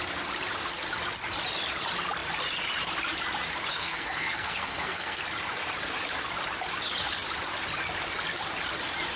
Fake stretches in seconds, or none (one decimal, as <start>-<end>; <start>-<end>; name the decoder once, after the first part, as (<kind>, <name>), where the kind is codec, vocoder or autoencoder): 3.7-5.2 (codec, SNAC)